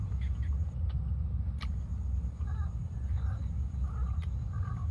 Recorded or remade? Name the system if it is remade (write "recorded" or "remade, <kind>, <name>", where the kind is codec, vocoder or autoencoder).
recorded